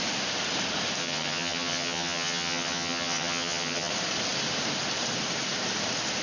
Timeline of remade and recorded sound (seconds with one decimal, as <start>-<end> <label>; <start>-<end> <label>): 0.0-1.0 recorded; 1.0-3.9 remade; 3.9-6.2 recorded